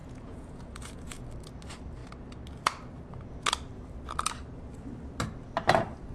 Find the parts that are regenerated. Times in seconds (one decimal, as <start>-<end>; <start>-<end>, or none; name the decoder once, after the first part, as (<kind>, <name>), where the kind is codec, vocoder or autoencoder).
0.0-1.3 (vocoder, Vocos)